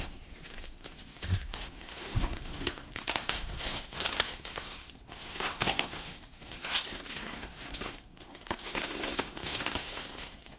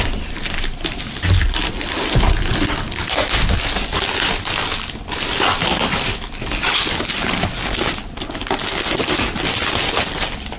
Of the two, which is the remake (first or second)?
first